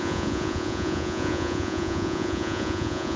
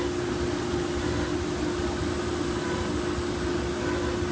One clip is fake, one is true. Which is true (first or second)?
second